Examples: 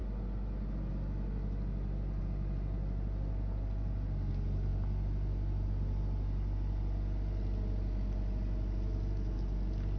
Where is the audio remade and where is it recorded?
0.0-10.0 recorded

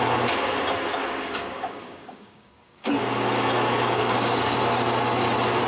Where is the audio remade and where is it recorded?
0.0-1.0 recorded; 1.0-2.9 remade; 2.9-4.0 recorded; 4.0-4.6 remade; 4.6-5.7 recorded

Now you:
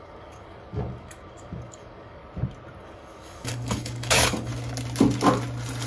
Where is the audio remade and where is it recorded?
0.0-2.2 remade; 2.2-2.8 recorded; 2.8-4.5 remade; 4.5-5.9 recorded

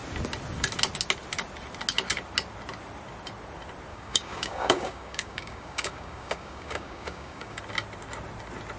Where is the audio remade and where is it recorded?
0.0-3.9 recorded; 3.9-7.6 remade; 7.6-8.8 recorded

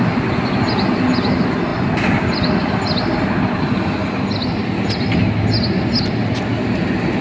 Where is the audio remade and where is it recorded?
0.0-7.2 recorded

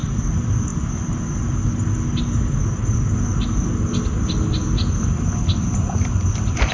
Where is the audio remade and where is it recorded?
0.0-6.7 recorded

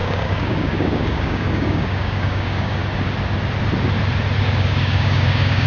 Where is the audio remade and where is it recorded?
0.0-2.8 remade; 2.8-4.4 recorded; 4.4-5.7 remade

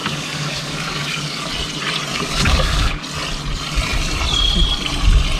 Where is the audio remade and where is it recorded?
0.0-1.5 remade; 1.5-2.1 recorded; 2.1-3.0 remade; 3.0-5.4 recorded